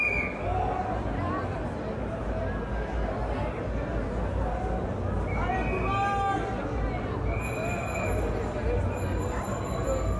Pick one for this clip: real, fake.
real